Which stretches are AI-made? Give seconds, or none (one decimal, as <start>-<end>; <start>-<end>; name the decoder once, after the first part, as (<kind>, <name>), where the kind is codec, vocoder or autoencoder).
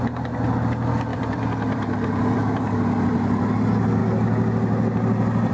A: 1.1-3.5 (vocoder, BigVGAN v2)